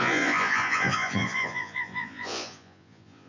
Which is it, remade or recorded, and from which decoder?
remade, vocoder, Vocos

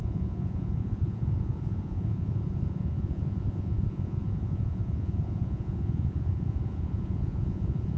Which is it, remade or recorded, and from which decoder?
remade, vocoder, Vocos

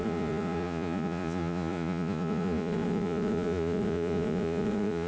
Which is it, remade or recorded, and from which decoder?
remade, vocoder, Vocos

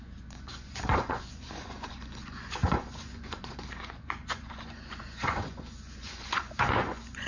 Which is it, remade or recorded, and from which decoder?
remade, vocoder, Vocos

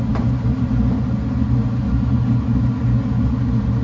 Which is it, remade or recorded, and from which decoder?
recorded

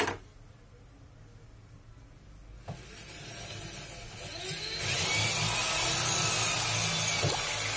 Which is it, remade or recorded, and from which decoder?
recorded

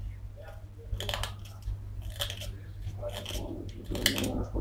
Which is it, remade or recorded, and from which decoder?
recorded